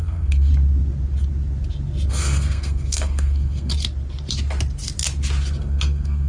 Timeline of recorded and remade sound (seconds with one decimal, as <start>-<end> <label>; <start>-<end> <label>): 0.0-0.5 remade; 0.5-2.1 recorded; 2.1-3.7 remade; 3.7-5.6 recorded; 5.6-6.3 remade